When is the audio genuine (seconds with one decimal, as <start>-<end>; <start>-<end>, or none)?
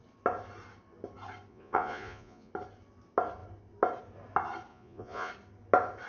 0.0-1.5; 2.5-4.7; 5.3-6.1